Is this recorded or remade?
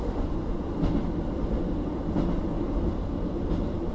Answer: recorded